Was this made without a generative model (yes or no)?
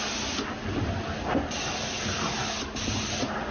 yes